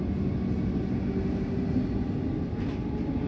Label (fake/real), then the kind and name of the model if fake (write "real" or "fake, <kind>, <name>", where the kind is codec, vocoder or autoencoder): real